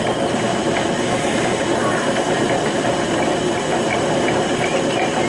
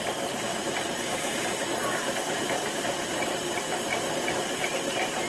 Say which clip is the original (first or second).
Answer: first